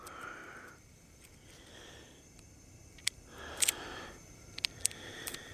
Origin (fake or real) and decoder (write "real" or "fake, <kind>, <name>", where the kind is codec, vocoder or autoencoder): fake, vocoder, BigVGAN v2